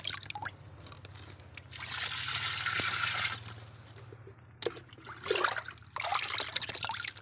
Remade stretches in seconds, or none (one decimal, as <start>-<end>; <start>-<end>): none